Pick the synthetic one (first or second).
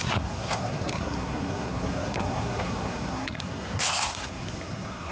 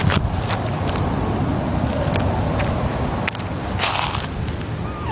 first